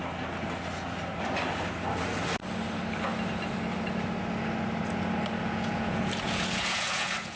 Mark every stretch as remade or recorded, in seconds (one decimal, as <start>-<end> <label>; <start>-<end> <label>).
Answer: 0.0-5.4 recorded; 5.4-7.4 remade